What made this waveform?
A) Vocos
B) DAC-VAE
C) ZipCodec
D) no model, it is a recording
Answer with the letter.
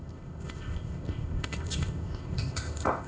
C